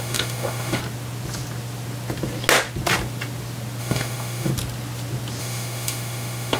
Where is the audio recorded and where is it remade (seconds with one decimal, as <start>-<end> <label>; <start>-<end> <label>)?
0.0-0.8 remade; 0.8-3.8 recorded; 3.8-4.5 remade; 4.5-5.4 recorded; 5.4-6.6 remade